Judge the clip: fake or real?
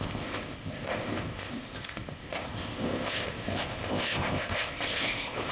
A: fake